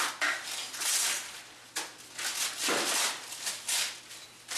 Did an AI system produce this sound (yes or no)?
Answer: no